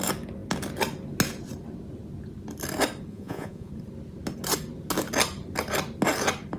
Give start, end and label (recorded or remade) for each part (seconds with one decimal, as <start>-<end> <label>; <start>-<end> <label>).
0.0-3.1 recorded; 3.1-3.7 remade; 3.7-6.6 recorded